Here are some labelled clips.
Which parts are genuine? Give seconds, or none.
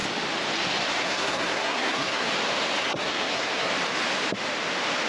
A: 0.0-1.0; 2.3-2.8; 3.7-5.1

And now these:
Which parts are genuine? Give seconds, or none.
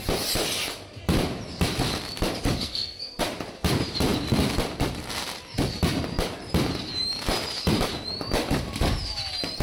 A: 0.0-2.6; 3.2-9.6